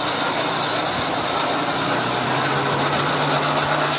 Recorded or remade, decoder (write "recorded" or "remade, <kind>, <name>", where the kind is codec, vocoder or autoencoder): recorded